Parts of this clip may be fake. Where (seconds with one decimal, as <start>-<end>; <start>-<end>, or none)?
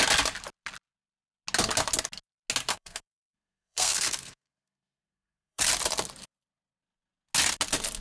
2.7-5.6